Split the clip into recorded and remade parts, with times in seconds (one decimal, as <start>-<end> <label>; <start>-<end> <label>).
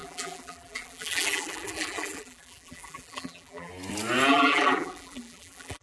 0.0-3.7 remade; 3.7-4.3 recorded; 4.3-5.8 remade